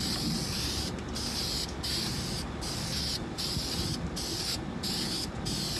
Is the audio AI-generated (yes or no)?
no